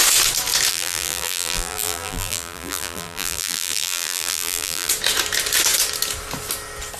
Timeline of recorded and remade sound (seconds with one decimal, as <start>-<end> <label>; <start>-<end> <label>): 0.0-0.7 recorded; 0.7-4.9 remade; 4.9-7.0 recorded